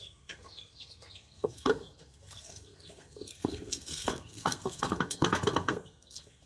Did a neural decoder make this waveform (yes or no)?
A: yes